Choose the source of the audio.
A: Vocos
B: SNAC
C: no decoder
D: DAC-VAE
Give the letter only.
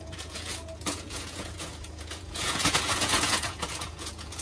A